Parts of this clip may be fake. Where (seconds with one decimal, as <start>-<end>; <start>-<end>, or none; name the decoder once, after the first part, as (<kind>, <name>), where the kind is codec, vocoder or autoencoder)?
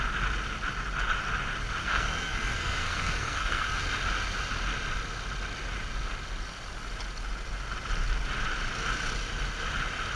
1.8-3.8 (codec, SNAC)